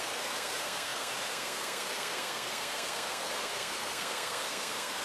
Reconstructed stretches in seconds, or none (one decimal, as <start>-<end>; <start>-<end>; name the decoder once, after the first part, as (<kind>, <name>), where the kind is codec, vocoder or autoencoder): 0.0-5.0 (codec, SNAC)